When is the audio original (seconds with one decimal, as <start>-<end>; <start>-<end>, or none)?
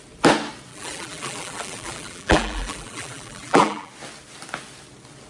0.0-0.7; 3.9-5.3